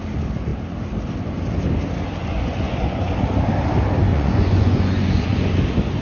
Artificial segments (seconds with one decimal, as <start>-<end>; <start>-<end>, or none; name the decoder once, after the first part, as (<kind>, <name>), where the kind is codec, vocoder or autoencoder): 2.2-3.1 (vocoder, Vocos); 4.1-5.5